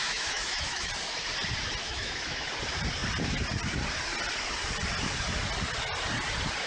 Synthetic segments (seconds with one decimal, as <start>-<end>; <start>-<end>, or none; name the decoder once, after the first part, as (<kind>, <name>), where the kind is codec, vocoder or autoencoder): 0.0-0.9 (autoencoder, DAC-VAE); 1.8-2.5